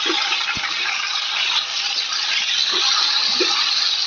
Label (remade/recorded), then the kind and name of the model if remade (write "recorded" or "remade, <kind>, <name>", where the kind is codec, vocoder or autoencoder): recorded